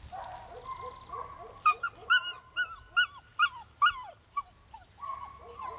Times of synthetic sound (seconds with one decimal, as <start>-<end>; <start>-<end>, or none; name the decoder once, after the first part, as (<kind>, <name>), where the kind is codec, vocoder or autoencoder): none